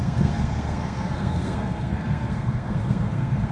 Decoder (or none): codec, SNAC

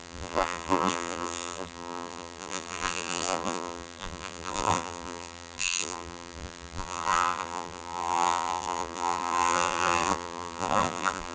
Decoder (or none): vocoder, BigVGAN v2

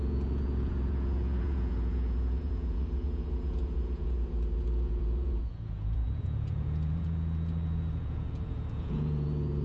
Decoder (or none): vocoder, Vocos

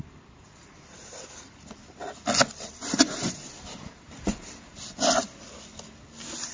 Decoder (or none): none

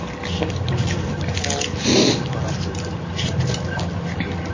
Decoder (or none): none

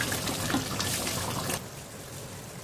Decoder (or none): none